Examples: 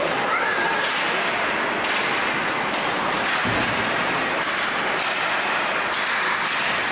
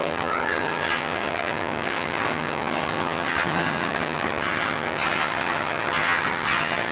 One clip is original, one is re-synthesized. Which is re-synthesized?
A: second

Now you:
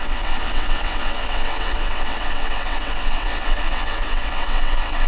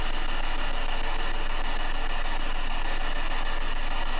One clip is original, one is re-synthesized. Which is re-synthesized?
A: first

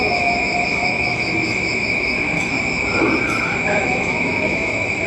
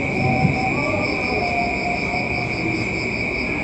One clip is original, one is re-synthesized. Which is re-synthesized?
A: first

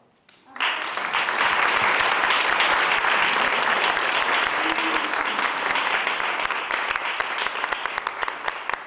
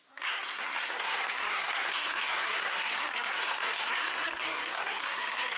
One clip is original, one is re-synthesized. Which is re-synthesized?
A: second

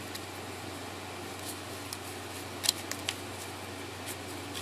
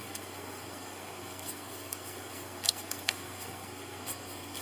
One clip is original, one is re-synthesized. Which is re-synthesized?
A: second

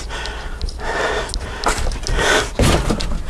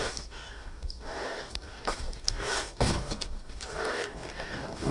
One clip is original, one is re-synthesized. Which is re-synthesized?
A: second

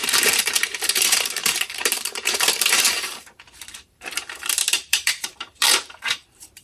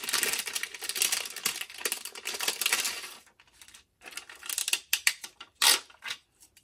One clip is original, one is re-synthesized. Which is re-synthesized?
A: first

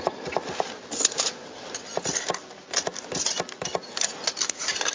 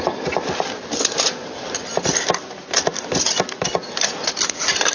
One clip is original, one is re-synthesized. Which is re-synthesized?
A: second